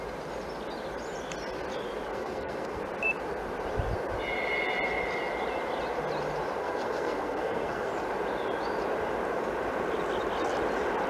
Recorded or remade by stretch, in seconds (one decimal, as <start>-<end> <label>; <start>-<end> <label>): 0.0-2.1 recorded; 2.1-2.8 remade; 2.8-6.6 recorded; 6.6-7.9 remade; 7.9-11.1 recorded